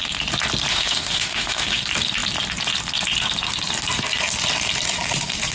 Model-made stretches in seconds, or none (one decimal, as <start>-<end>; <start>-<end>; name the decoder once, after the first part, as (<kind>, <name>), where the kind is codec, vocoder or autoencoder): 0.7-1.8 (autoencoder, DAC-VAE)